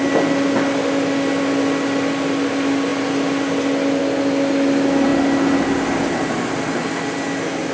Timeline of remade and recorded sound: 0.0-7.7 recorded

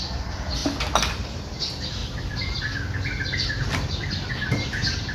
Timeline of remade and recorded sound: 0.0-0.6 remade; 0.6-1.1 recorded; 1.1-5.1 remade

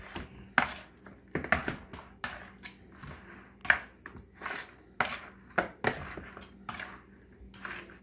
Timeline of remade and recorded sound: 0.0-8.0 recorded

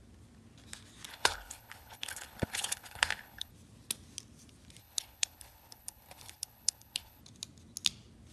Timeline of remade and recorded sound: 0.0-1.1 recorded; 1.1-3.5 remade; 3.5-4.8 recorded; 4.8-7.2 remade; 7.2-8.3 recorded

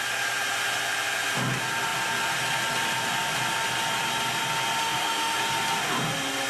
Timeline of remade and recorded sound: 0.0-4.8 recorded; 4.8-5.4 remade; 5.4-6.5 recorded

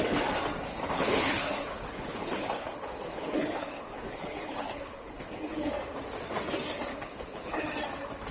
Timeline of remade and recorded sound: 0.0-0.7 recorded; 0.7-5.7 remade; 5.7-6.9 recorded; 6.9-7.6 remade; 7.6-8.3 recorded

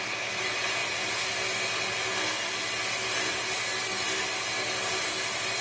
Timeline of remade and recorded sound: 0.0-5.6 recorded

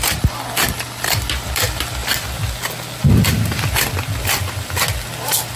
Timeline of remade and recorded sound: 0.0-5.6 recorded